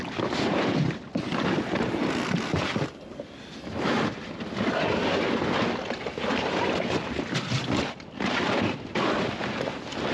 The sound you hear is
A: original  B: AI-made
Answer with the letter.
A